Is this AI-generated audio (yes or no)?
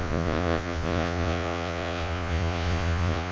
yes